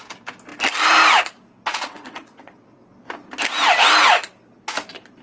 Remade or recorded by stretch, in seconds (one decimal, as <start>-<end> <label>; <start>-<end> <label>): 0.0-1.7 recorded; 1.7-2.9 remade; 2.9-5.2 recorded